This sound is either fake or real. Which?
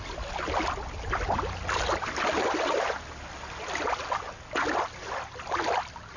real